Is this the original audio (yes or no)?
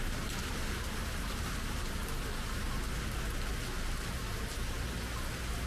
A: yes